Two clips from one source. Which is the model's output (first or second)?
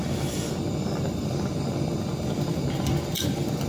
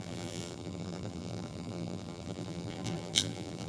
second